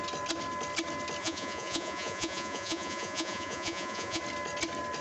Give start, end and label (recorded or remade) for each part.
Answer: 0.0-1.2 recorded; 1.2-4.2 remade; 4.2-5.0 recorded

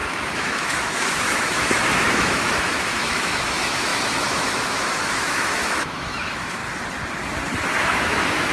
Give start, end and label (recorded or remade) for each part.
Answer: 0.0-6.6 remade; 6.6-7.8 recorded; 7.8-8.5 remade

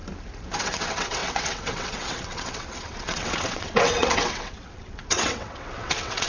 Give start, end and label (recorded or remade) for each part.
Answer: 0.0-0.6 recorded; 0.6-6.3 remade

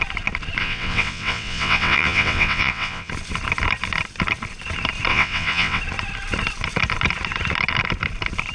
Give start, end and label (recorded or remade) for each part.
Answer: 0.0-0.6 recorded; 0.6-3.1 remade; 3.1-5.1 recorded; 5.1-5.8 remade; 5.8-8.5 recorded